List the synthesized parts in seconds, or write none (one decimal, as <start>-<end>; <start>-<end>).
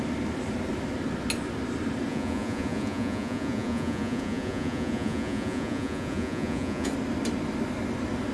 2.1-6.9